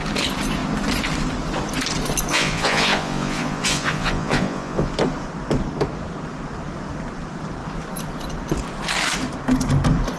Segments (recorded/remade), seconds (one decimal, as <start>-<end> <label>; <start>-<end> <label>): 0.0-2.3 recorded; 2.3-4.9 remade; 4.9-10.2 recorded